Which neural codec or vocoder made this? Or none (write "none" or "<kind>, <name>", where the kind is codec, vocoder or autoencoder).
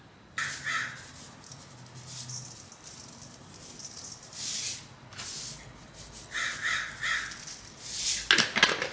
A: none